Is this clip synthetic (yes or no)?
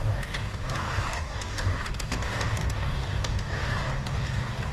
yes